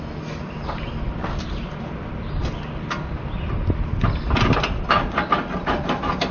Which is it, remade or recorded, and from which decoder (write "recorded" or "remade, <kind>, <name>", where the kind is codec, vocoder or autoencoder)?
recorded